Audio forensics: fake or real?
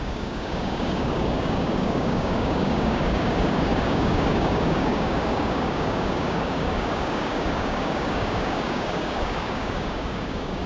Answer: fake